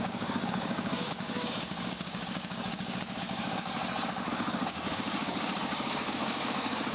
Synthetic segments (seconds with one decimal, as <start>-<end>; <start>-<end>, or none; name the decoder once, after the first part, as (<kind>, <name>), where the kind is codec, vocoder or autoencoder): 0.0-3.8 (codec, DAC); 4.3-6.9